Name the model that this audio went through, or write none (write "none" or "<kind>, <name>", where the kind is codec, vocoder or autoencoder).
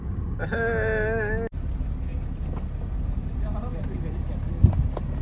none